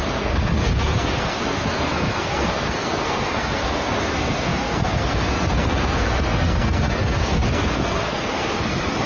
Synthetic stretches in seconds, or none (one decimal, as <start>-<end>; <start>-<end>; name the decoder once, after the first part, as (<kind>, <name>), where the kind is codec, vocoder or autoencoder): 0.0-9.1 (codec, SNAC)